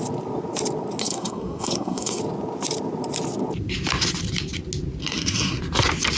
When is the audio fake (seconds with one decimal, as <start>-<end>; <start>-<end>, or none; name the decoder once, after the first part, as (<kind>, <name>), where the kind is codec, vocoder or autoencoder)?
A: 1.0-2.2 (codec, SNAC); 5.0-5.6